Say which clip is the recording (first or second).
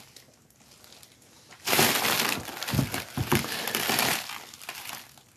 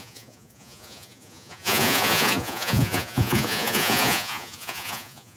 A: first